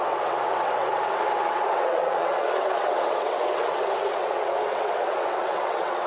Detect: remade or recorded remade